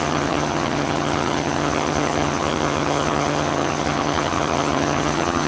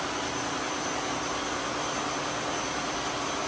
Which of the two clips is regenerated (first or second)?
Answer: first